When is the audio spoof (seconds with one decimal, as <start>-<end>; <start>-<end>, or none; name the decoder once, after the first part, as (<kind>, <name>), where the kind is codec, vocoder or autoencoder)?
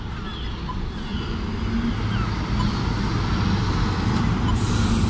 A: none